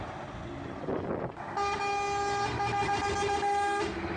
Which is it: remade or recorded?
recorded